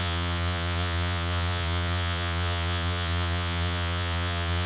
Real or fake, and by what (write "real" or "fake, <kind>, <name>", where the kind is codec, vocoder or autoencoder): fake, vocoder, Vocos